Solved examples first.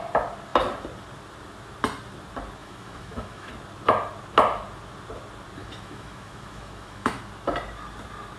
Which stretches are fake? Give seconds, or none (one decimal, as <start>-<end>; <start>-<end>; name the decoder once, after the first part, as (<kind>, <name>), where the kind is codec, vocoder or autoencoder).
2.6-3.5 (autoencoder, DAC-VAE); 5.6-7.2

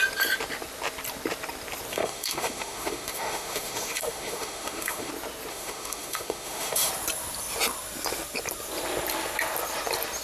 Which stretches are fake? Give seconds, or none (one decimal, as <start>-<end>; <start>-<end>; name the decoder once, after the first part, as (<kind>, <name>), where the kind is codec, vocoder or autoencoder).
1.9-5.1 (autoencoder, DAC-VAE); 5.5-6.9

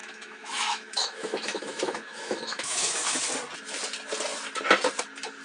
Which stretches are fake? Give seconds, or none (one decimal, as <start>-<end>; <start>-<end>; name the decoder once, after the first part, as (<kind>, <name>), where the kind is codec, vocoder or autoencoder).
0.0-3.2 (autoencoder, DAC-VAE)

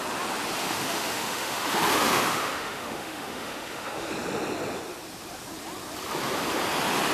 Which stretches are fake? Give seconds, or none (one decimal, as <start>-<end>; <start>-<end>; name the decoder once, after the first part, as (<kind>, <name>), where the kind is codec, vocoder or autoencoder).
0.6-4.1 (autoencoder, DAC-VAE)

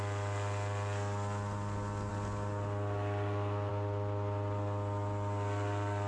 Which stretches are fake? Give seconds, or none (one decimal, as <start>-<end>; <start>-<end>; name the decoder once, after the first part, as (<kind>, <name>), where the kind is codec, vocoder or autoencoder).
none